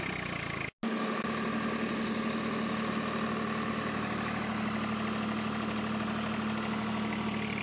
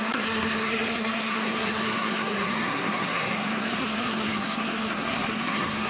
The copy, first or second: second